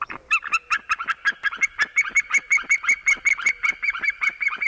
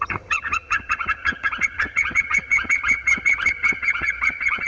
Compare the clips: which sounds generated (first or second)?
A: second